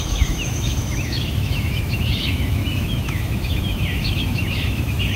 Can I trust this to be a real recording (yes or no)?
no